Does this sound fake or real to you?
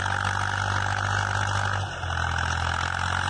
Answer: real